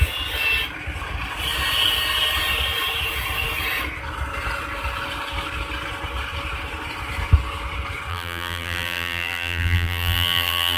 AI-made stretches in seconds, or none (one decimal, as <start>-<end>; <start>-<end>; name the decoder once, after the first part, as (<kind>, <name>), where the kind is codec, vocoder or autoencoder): 8.1-10.8 (vocoder, BigVGAN v2)

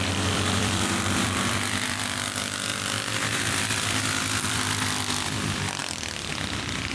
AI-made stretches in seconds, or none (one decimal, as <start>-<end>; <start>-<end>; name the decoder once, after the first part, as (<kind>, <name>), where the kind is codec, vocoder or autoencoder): 0.0-6.9 (vocoder, BigVGAN v2)

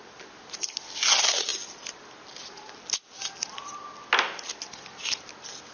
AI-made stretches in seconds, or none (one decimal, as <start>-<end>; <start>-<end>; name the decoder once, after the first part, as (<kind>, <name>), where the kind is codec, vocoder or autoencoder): none

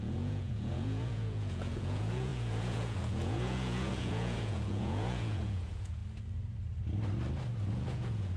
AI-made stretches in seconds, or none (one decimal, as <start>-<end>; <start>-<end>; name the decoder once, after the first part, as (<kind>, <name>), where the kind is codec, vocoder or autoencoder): 0.0-6.0 (vocoder, Vocos); 7.7-8.4

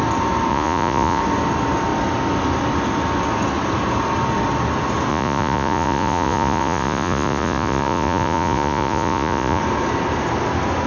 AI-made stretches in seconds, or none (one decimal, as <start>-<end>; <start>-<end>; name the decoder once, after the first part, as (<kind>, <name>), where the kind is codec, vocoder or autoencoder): 0.5-1.2 (vocoder, Vocos); 5.1-9.6

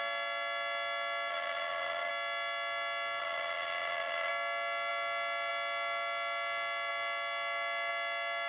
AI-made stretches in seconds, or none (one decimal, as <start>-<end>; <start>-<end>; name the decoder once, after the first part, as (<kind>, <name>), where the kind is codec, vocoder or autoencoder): 1.3-2.1 (vocoder, BigVGAN v2); 3.2-4.3

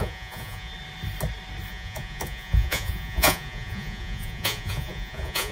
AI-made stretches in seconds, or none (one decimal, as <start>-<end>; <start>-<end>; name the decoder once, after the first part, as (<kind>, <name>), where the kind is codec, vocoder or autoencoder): 0.0-0.7 (vocoder, Vocos); 1.7-5.5